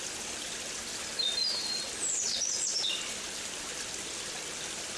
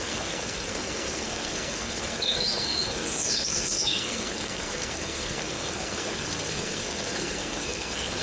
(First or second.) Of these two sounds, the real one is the first